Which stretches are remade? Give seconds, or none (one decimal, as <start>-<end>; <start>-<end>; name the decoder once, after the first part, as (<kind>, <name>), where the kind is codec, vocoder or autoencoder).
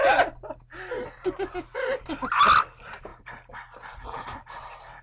none